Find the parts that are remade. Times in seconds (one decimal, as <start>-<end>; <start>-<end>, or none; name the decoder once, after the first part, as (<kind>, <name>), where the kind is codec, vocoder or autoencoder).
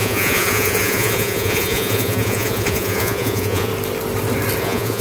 0.0-3.7 (vocoder, Vocos); 4.6-5.0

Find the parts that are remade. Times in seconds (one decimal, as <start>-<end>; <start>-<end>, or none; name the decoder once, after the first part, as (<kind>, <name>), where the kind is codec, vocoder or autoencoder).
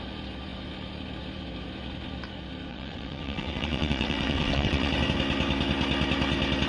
2.7-4.9 (vocoder, WaveNeXt)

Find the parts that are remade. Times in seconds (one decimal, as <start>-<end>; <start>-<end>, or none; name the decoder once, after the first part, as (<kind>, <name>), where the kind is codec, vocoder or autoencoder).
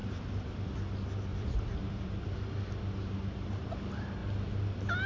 1.3-2.3 (vocoder, BigVGAN v2)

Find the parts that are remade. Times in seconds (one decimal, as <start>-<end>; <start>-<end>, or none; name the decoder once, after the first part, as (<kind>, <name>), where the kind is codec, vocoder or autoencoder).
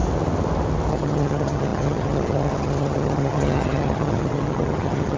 0.9-5.2 (vocoder, HiFi-GAN)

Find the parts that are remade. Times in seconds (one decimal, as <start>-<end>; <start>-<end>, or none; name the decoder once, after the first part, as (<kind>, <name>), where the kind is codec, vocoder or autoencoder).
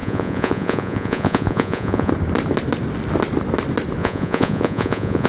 0.0-2.1 (vocoder, Vocos); 4.0-5.3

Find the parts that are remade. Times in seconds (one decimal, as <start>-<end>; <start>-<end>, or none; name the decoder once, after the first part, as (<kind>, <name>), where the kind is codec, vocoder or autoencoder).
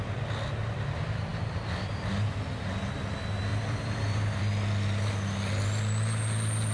3.5-4.4 (vocoder, BigVGAN v2)